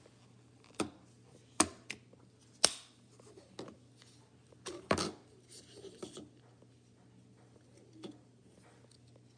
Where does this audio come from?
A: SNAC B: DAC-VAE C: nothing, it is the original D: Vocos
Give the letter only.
C